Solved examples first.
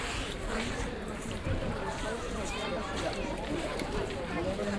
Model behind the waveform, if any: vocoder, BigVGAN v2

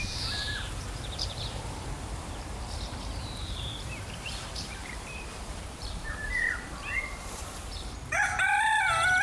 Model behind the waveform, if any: vocoder, BigVGAN v2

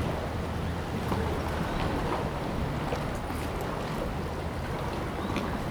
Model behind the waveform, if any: none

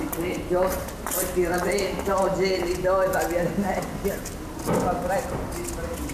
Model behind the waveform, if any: none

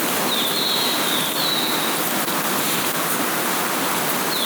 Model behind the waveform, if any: none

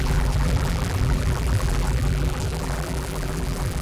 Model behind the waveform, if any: vocoder, BigVGAN v2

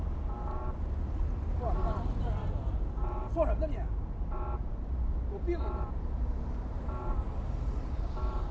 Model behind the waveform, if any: vocoder, BigVGAN v2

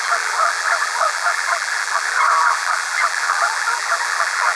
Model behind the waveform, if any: vocoder, BigVGAN v2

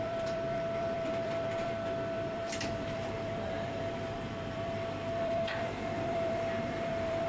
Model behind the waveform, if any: vocoder, BigVGAN v2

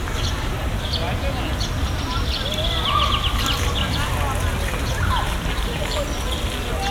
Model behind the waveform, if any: none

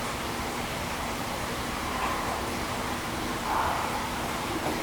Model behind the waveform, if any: vocoder, BigVGAN v2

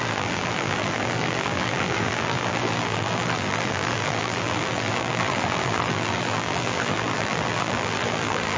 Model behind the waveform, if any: vocoder, BigVGAN v2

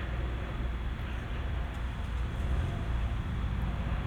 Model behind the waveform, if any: none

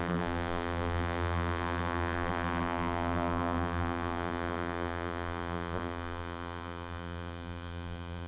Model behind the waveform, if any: vocoder, BigVGAN v2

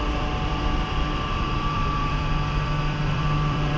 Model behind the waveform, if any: vocoder, BigVGAN v2